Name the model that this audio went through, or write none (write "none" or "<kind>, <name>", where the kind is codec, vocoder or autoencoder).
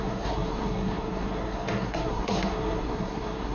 codec, SNAC